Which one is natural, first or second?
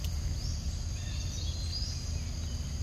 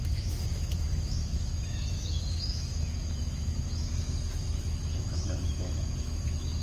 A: first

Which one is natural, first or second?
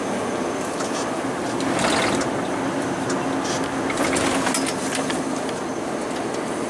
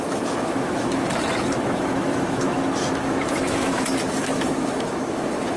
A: first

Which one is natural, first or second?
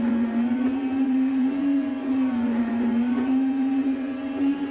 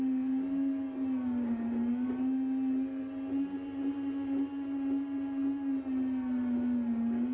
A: second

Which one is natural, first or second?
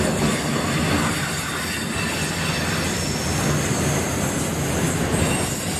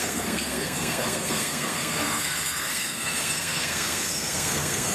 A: first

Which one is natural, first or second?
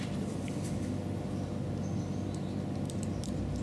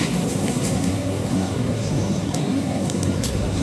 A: first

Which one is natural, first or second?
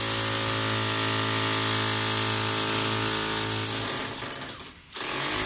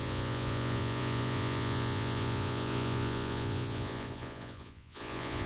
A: first